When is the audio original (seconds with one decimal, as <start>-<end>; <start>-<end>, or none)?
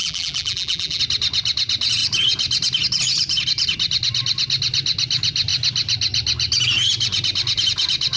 1.0-8.2